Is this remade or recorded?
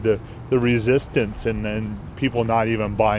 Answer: recorded